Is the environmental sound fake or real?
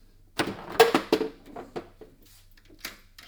real